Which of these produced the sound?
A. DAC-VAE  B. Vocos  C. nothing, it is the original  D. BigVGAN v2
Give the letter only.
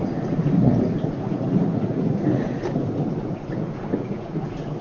B